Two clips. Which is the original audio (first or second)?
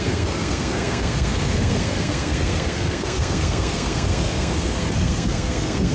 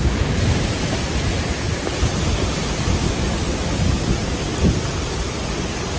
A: second